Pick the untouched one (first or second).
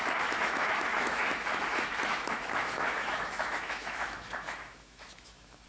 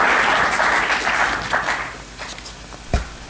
second